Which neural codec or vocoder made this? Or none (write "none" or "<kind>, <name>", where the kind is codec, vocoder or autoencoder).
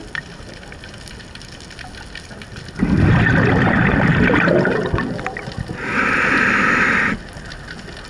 none